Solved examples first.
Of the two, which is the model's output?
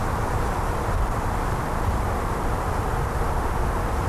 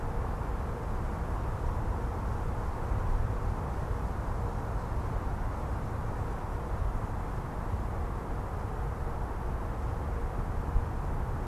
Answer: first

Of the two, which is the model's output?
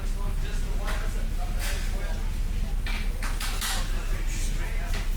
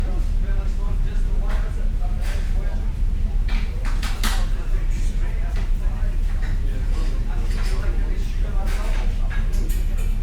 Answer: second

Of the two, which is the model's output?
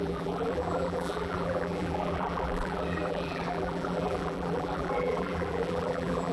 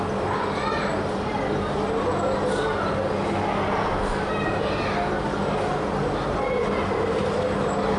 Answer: first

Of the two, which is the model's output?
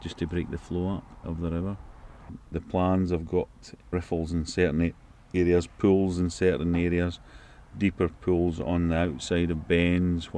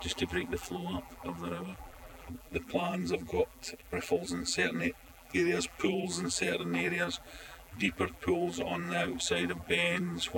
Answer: second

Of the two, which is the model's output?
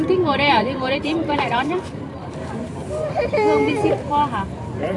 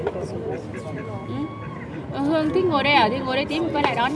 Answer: first